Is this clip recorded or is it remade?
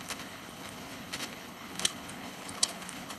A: remade